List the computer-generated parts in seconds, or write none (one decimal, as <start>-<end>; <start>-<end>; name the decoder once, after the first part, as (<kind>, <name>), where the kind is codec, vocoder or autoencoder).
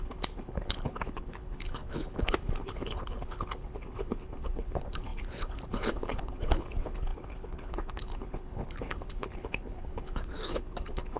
0.0-11.2 (codec, HILCodec)